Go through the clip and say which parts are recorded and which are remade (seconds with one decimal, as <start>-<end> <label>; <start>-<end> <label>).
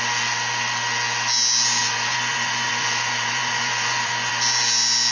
0.0-1.8 recorded; 1.8-4.3 remade; 4.3-5.1 recorded